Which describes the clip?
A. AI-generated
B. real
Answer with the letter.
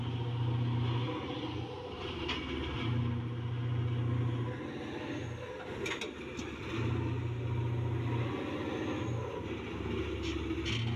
B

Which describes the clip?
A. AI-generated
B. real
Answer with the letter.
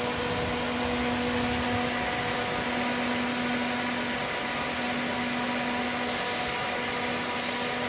B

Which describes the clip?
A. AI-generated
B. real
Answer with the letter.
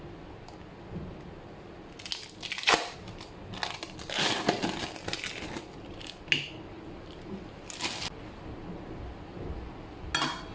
B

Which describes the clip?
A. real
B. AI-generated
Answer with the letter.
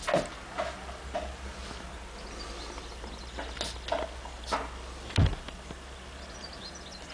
A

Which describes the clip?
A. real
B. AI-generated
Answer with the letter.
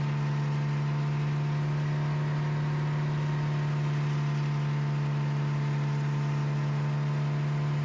A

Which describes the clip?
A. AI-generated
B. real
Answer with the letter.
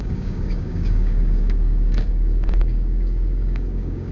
A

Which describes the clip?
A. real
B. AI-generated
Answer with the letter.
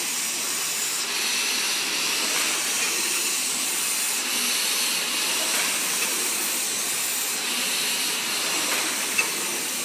A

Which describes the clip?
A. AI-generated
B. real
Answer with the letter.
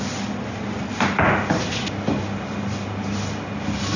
B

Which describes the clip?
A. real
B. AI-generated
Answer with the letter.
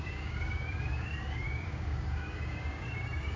B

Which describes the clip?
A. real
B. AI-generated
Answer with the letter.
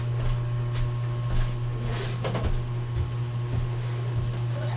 A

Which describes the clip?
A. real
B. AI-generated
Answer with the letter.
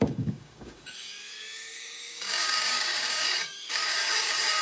B